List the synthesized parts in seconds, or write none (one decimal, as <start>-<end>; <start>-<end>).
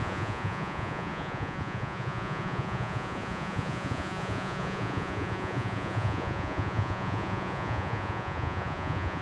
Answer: 0.0-9.2